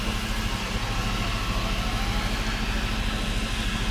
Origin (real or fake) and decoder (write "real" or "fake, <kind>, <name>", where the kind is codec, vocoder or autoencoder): real